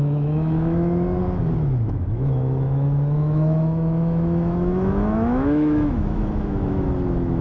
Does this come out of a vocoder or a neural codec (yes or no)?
yes